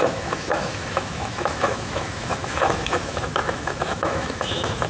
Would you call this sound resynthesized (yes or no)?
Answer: yes